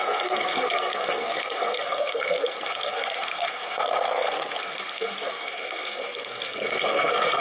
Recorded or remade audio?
remade